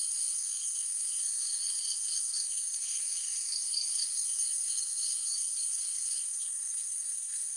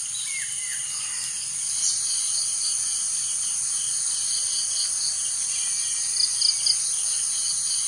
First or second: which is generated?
first